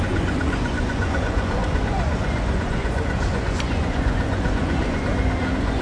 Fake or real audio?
fake